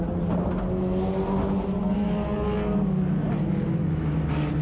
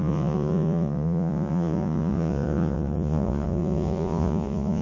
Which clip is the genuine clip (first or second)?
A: first